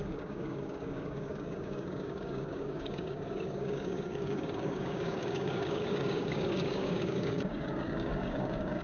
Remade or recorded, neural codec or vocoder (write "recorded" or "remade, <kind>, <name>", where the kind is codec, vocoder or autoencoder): remade, codec, DAC